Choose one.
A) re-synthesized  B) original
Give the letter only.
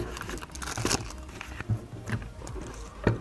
B